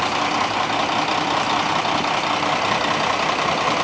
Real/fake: real